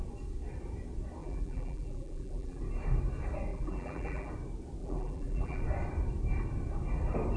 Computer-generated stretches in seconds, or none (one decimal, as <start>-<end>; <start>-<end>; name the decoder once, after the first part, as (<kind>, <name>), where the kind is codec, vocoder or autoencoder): 1.2-2.6 (vocoder, BigVGAN v2); 3.5-4.3; 4.8-5.6